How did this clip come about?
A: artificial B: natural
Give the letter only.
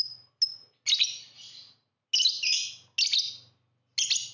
B